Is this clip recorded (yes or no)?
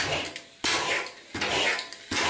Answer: yes